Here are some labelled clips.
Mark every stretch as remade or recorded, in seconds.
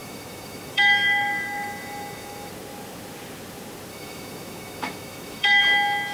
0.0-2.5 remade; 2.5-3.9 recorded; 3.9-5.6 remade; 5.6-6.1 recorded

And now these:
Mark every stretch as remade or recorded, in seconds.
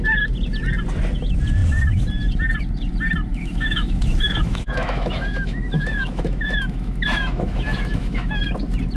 0.0-3.3 recorded; 3.3-8.5 remade; 8.5-9.0 recorded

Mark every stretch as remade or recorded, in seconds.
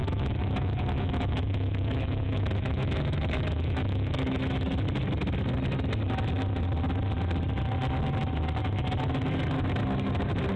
0.0-4.4 remade; 4.4-10.6 recorded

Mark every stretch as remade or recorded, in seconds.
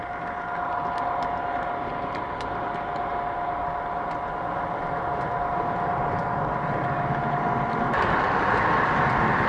0.0-9.5 recorded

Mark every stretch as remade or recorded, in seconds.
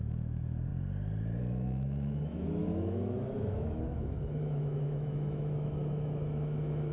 0.0-0.7 remade; 0.7-1.4 recorded; 1.4-6.9 remade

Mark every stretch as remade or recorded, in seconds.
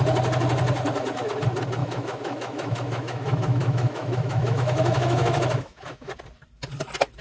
0.0-1.8 recorded; 1.8-6.1 remade; 6.1-7.2 recorded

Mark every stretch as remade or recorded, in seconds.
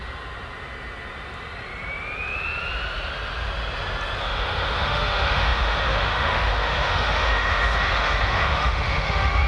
0.0-4.2 recorded; 4.2-9.5 remade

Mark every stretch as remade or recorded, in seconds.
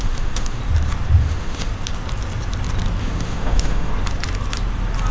0.0-0.6 remade; 0.6-1.2 recorded; 1.2-1.7 remade; 1.7-3.0 recorded; 3.0-3.9 remade; 3.9-5.1 recorded